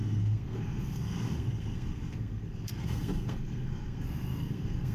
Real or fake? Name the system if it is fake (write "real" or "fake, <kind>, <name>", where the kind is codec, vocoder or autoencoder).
fake, codec, SNAC